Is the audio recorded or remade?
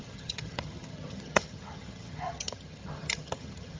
remade